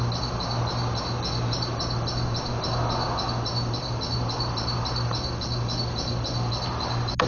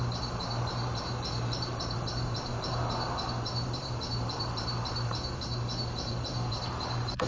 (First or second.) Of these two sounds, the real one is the first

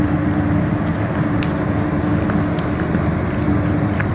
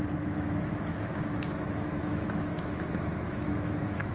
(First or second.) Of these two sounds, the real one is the first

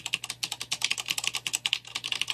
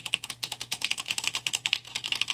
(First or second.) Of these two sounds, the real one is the first